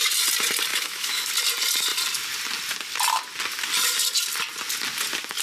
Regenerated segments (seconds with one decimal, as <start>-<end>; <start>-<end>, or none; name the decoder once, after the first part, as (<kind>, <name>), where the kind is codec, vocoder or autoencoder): 0.7-1.3 (autoencoder, DAC-VAE)